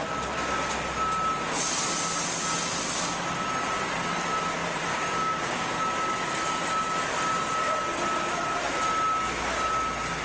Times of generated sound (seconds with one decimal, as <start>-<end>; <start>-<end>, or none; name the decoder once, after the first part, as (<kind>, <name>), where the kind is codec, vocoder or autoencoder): 4.9-5.7 (codec, DAC)